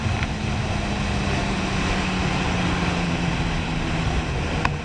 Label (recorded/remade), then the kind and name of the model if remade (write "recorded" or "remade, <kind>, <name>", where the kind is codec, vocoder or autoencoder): recorded